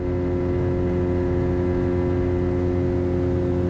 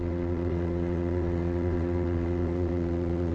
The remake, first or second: second